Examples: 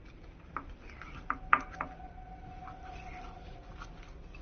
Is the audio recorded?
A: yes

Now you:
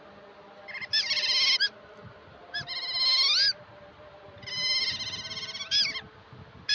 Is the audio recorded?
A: yes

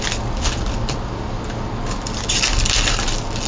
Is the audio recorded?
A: yes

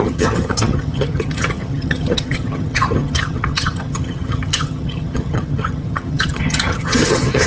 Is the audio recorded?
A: no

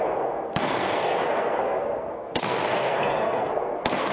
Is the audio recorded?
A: no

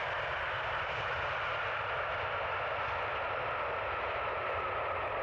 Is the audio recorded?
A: yes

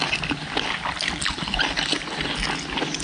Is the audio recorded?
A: yes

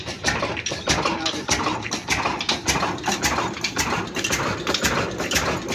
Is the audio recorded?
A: yes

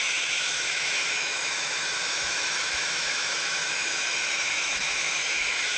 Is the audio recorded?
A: no